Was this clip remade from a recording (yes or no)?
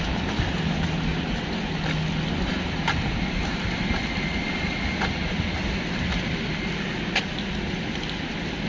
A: no